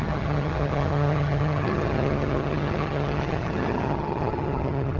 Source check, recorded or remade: remade